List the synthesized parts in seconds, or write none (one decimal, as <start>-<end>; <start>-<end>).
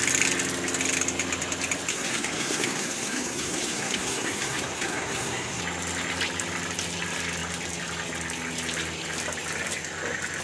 1.9-5.6